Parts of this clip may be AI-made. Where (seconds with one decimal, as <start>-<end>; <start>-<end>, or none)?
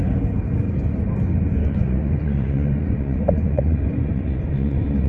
1.6-5.1